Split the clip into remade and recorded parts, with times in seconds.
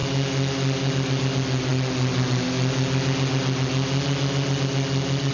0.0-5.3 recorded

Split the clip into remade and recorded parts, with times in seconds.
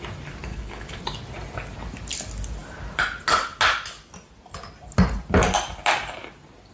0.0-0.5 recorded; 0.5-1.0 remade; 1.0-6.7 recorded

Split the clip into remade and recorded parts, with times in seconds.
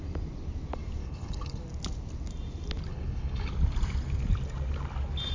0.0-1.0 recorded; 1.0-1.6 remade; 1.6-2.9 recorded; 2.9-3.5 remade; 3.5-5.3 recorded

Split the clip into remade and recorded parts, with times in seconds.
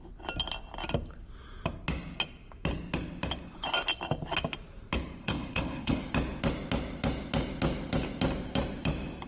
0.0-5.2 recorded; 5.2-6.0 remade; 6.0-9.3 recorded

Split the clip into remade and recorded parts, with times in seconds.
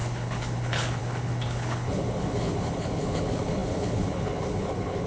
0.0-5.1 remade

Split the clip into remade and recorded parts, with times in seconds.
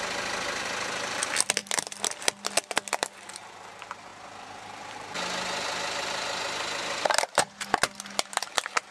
0.0-8.9 recorded